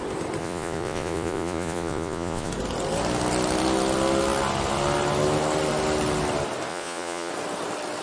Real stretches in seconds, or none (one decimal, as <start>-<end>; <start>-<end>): 0.0-0.4; 2.5-6.7; 7.3-8.0